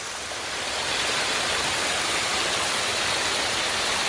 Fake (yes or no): no